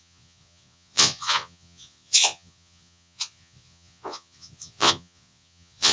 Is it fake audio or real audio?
fake